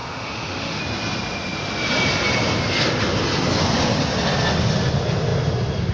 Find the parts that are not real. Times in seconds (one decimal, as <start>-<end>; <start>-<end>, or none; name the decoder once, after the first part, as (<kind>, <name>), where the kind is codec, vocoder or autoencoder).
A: 0.0-0.8 (autoencoder, DAC-VAE)